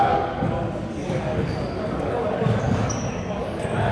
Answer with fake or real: fake